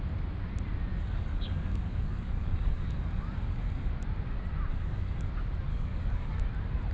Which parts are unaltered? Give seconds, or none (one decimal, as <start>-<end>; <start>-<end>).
0.0-1.0; 3.9-4.7; 5.3-5.7; 6.4-6.9